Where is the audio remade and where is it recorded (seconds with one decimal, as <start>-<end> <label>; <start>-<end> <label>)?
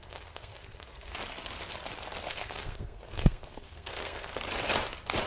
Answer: 0.0-1.1 remade; 1.1-2.3 recorded; 2.3-4.3 remade; 4.3-5.3 recorded